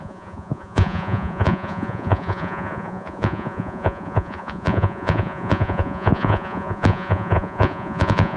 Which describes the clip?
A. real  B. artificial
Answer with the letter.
B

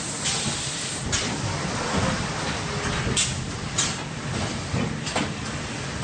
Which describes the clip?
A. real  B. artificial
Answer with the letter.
A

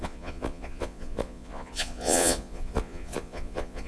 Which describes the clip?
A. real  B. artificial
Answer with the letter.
B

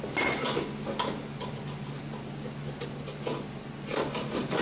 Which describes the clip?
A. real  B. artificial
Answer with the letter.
A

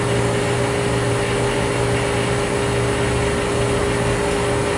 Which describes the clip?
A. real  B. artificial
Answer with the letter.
A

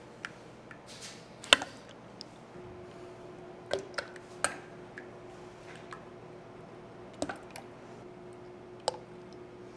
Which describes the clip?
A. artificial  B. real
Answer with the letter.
B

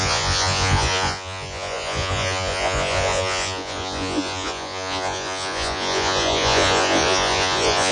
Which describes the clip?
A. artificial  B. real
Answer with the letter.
A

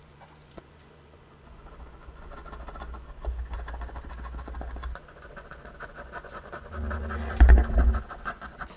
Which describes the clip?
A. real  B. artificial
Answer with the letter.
B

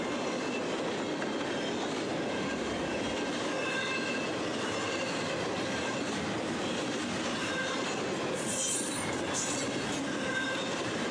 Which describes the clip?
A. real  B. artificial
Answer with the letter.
A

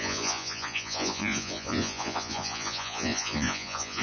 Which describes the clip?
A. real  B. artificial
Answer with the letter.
B